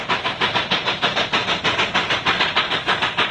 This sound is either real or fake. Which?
real